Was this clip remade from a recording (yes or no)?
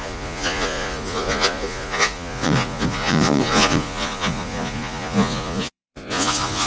yes